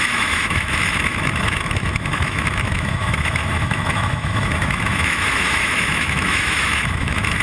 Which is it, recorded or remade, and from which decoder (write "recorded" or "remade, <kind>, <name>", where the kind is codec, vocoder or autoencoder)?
remade, autoencoder, DAC-VAE